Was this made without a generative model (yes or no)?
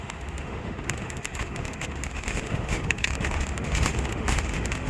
no